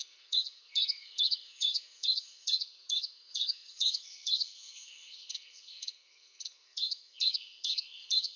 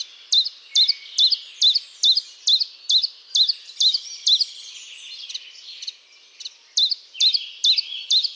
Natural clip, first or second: second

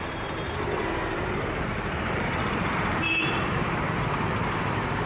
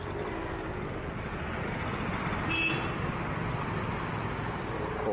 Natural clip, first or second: second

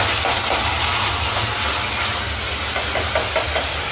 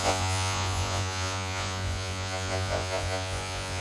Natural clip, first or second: first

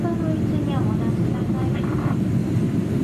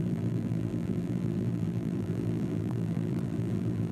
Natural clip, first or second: first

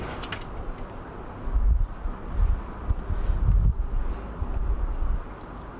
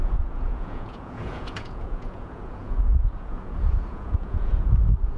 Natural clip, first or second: first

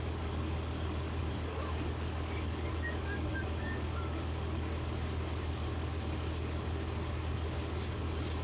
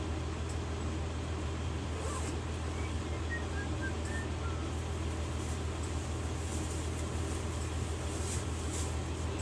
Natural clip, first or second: second